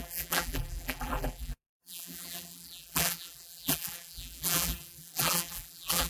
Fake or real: fake